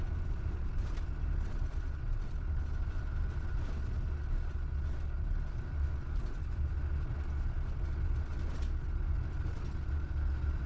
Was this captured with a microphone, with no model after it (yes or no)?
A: yes